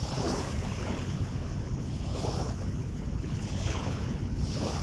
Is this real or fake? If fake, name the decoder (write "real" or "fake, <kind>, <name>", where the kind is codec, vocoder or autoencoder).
fake, codec, HILCodec